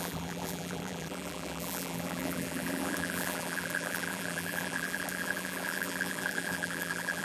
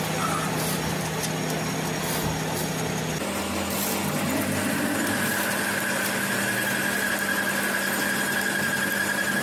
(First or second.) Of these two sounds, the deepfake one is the first